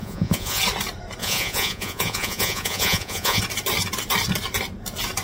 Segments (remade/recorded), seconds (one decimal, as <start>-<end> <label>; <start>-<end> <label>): 0.0-0.6 remade; 0.6-1.2 recorded; 1.2-3.4 remade; 3.4-5.2 recorded